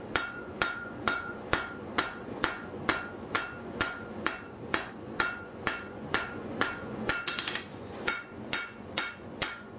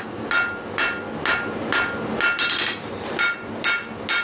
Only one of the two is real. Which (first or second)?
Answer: second